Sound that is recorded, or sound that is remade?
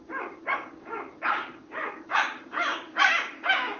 remade